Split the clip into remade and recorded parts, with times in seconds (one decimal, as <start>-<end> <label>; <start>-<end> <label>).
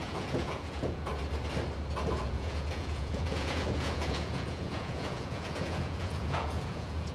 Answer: 0.0-1.1 remade; 1.1-2.1 recorded; 2.1-7.1 remade